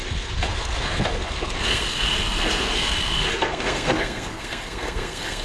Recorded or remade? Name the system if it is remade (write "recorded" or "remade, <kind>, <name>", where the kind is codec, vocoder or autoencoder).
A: remade, codec, SNAC